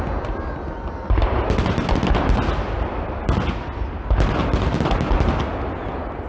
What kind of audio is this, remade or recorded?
recorded